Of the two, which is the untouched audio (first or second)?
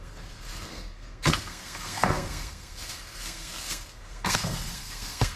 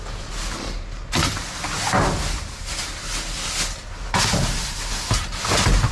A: second